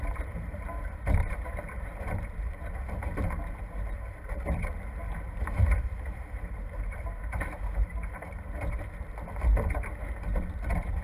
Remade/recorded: remade